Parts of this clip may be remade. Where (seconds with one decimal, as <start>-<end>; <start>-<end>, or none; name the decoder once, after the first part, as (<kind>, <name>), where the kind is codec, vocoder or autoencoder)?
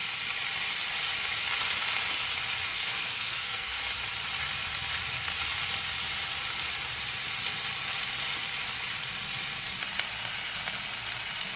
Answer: 2.7-3.8 (codec, SNAC)